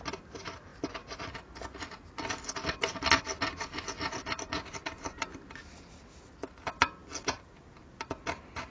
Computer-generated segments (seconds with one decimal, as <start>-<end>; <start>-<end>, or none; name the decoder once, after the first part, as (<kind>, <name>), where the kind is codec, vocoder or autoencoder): none